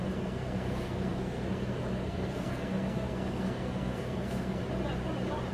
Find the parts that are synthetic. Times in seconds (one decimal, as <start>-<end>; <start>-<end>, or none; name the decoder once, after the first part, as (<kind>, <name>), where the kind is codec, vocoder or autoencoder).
0.0-4.6 (codec, SNAC)